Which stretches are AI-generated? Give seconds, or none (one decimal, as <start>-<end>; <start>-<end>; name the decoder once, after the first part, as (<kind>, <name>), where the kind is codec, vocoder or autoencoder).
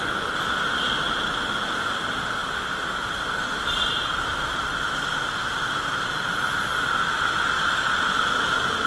none